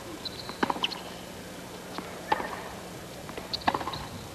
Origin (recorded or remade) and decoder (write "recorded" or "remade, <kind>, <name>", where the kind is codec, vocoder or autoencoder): recorded